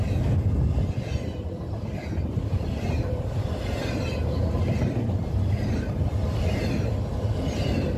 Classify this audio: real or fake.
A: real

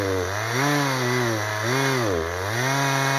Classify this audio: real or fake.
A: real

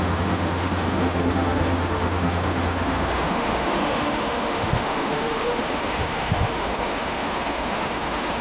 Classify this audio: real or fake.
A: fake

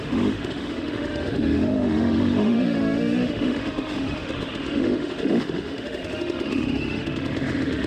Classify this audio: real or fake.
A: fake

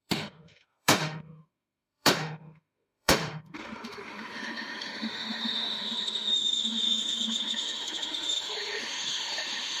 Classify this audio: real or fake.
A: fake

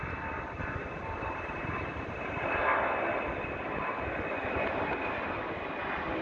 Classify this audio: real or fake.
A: real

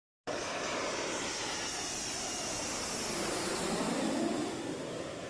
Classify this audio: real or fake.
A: real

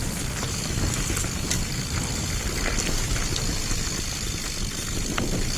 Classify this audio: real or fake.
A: real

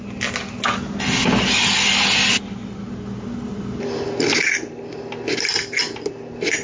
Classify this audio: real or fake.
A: real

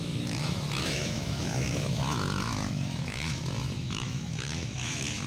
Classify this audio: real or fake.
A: fake